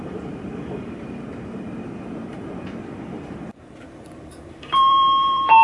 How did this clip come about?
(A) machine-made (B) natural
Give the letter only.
A